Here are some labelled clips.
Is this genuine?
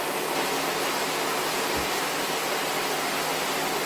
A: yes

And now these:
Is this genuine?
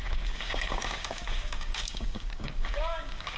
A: no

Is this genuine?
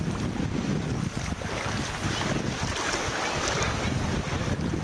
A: yes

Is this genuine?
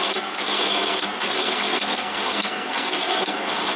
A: no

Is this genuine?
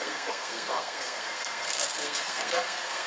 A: no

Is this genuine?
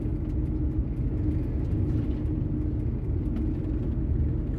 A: yes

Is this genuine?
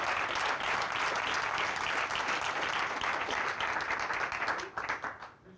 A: yes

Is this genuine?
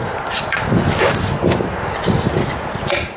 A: yes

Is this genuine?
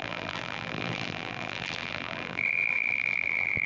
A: no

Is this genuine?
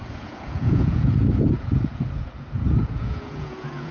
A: no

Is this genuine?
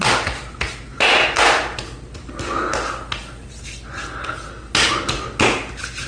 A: yes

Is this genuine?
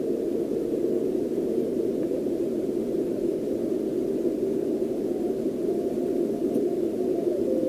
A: yes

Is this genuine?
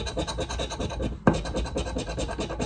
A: yes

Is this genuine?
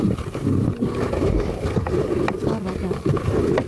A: yes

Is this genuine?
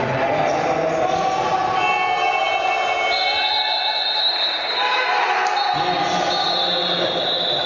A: yes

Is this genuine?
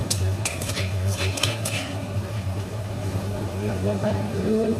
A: no